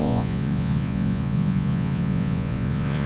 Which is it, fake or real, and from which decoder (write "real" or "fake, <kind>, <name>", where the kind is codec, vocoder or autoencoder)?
fake, vocoder, Vocos